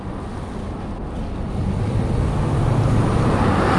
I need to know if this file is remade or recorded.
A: recorded